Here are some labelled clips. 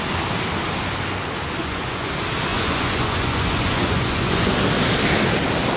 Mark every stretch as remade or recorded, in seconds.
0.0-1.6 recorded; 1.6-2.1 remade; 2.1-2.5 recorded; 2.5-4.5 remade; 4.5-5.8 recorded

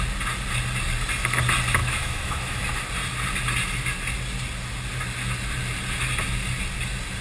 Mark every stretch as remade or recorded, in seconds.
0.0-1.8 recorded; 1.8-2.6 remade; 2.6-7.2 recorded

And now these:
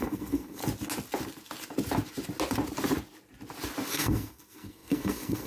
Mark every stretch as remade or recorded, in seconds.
0.0-0.6 remade; 0.6-3.9 recorded; 3.9-5.5 remade